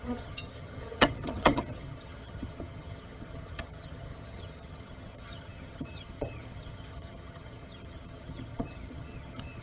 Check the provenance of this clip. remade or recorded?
remade